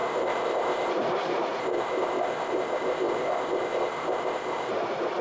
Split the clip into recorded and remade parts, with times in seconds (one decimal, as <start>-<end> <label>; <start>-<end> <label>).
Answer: 0.0-0.9 remade; 0.9-1.6 recorded; 1.6-4.7 remade; 4.7-5.2 recorded